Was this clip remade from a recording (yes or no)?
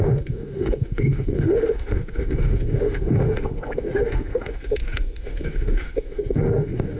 yes